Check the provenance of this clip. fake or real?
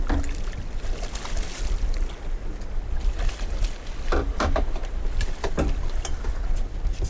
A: real